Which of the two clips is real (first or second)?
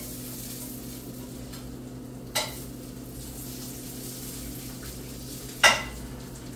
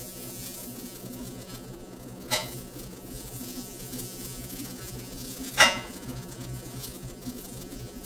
first